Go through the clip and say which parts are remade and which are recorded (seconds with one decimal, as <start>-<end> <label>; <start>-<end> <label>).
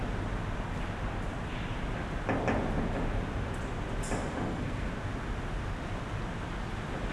0.0-4.3 recorded; 4.3-4.9 remade; 4.9-7.1 recorded